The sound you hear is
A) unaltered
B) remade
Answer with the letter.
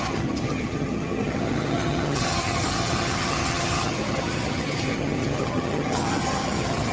B